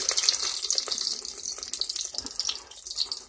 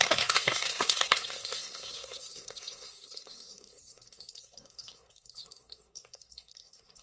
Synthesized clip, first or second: second